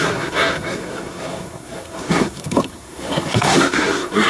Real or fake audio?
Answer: fake